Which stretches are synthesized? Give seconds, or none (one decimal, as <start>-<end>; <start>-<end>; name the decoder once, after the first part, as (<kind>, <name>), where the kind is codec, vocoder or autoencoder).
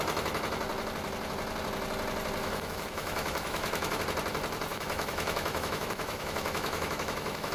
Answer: 2.4-4.0 (autoencoder, DAC-VAE); 4.7-7.5